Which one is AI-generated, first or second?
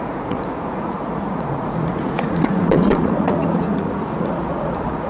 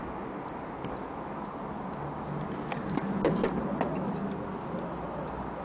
first